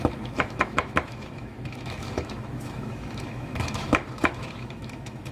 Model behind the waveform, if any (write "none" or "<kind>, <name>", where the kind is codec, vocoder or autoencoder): autoencoder, DAC-VAE